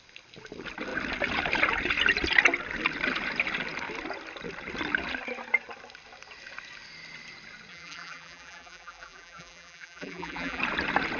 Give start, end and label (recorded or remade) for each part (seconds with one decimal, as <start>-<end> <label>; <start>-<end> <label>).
0.0-7.7 recorded; 7.7-10.6 remade; 10.6-11.2 recorded